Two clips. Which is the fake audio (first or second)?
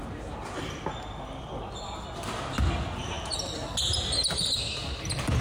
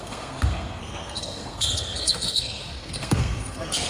second